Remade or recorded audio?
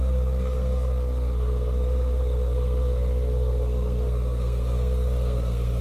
remade